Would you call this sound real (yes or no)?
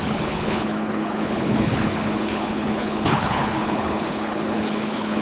no